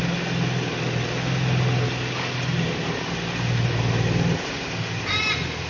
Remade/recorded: recorded